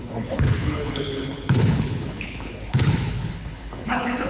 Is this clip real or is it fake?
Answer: fake